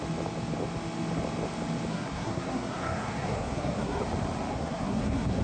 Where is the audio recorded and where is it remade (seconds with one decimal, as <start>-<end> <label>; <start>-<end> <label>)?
0.0-1.9 recorded; 1.9-4.0 remade; 4.0-4.5 recorded; 4.5-5.4 remade